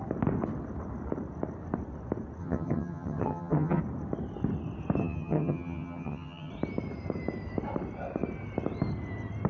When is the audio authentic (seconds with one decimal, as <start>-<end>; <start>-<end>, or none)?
0.0-2.4; 3.8-5.0; 6.5-9.5